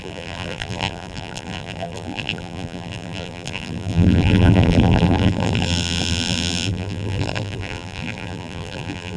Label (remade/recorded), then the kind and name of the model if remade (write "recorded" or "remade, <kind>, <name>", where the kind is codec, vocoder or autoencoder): remade, vocoder, BigVGAN v2